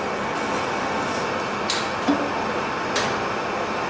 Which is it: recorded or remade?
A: recorded